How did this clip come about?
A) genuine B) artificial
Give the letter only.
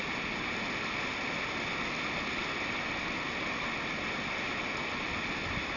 A